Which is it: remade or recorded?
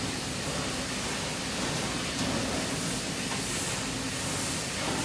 recorded